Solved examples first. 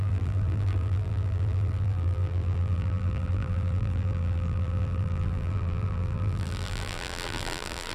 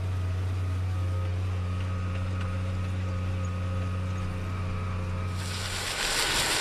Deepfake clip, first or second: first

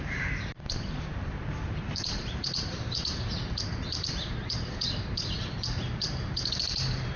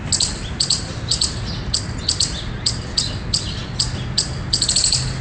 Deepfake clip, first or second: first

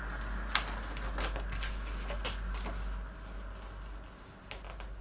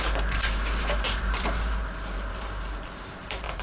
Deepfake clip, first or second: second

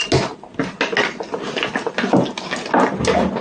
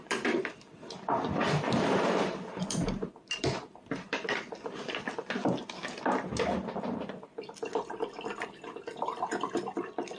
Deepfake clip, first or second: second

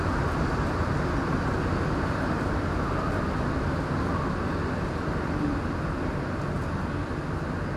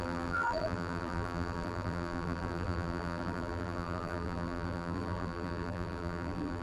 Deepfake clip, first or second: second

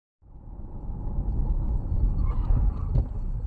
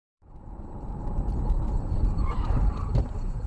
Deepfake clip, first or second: second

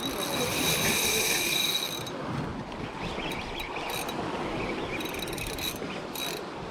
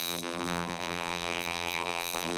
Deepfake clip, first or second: second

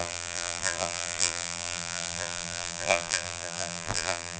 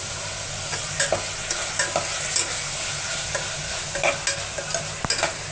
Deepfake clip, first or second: first